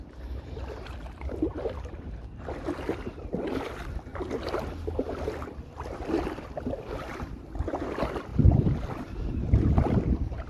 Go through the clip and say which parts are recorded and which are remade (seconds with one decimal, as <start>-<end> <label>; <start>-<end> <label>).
0.0-1.5 recorded; 1.5-3.5 remade; 3.5-8.3 recorded; 8.3-10.0 remade; 10.0-10.5 recorded